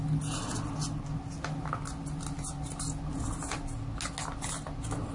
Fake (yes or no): no